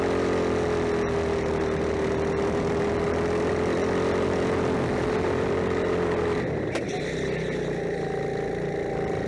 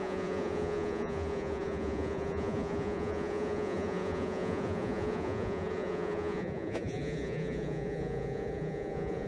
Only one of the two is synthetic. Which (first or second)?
second